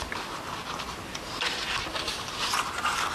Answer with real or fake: real